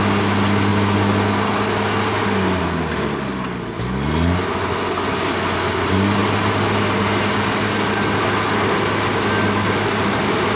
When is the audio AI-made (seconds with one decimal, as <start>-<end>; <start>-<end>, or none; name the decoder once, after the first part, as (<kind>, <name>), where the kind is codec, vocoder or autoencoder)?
none

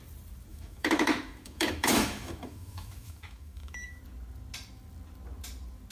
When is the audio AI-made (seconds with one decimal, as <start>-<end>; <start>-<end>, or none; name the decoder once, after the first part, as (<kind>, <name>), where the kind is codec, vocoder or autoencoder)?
0.5-4.0 (autoencoder, DAC-VAE)

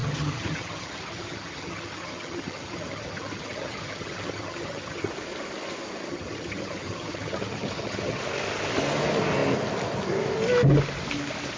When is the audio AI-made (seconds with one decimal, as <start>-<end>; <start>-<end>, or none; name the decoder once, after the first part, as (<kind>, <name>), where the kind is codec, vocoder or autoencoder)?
0.0-5.1 (vocoder, HiFi-GAN); 6.1-8.2